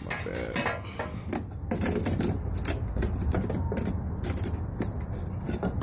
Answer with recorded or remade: recorded